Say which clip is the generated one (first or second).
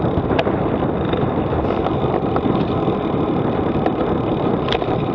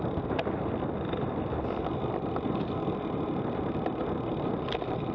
first